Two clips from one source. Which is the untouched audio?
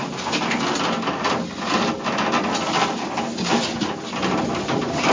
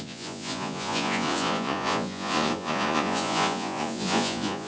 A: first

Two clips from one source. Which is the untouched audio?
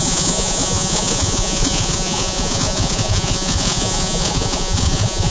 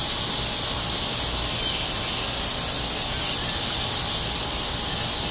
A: second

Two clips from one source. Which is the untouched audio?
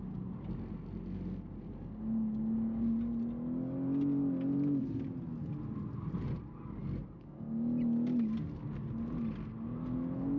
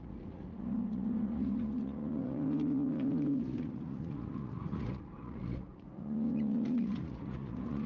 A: first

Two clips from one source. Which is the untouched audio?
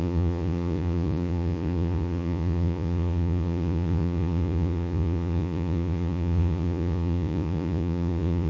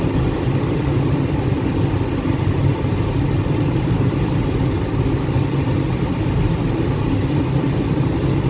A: second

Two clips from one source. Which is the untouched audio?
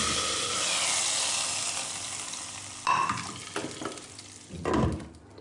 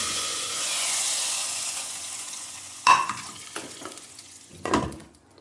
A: first